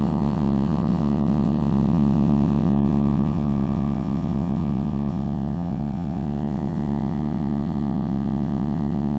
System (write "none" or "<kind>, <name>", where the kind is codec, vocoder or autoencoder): vocoder, WaveNeXt